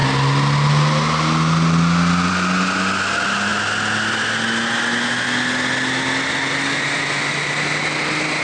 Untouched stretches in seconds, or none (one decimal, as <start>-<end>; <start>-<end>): 0.0-8.4